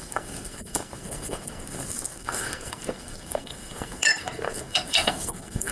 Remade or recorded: remade